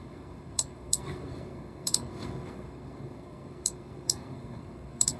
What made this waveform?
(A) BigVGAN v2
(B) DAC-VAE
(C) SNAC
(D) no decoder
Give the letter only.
C